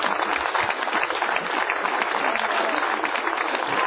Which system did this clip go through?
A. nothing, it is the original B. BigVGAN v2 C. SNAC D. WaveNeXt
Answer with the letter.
A